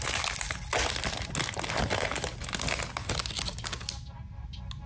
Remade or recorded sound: recorded